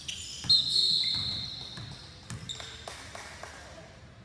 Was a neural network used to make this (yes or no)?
no